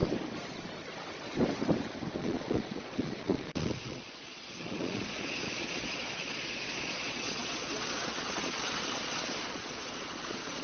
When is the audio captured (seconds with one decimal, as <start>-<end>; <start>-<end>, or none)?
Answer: 0.0-2.2